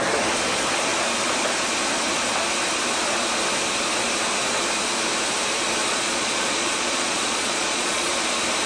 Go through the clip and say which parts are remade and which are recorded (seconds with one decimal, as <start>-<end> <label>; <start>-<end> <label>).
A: 0.0-5.8 recorded; 5.8-8.1 remade; 8.1-8.7 recorded